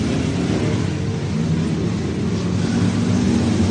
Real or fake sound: real